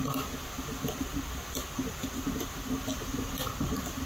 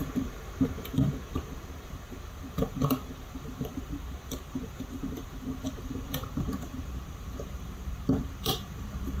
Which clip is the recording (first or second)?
first